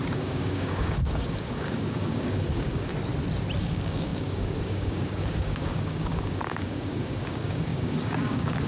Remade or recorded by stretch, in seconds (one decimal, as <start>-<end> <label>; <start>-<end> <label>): 0.0-2.9 remade; 2.9-3.6 recorded; 3.6-8.7 remade